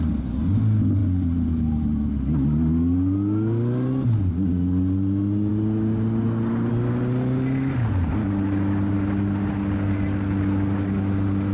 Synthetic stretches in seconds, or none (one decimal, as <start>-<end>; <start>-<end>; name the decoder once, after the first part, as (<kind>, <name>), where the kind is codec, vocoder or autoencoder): none